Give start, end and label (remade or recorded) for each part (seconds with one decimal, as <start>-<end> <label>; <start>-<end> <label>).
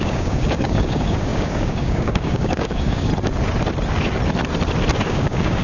0.0-3.1 remade; 3.1-5.1 recorded; 5.1-5.6 remade